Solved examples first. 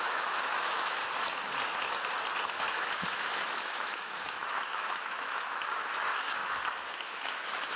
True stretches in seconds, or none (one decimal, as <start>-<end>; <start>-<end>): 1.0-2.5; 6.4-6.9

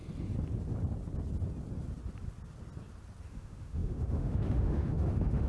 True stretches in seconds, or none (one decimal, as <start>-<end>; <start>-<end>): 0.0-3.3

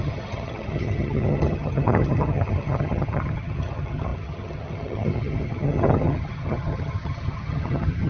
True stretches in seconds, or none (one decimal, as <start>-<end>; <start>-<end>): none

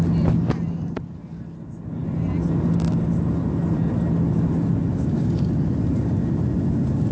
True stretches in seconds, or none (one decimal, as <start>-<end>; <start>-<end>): 0.0-7.1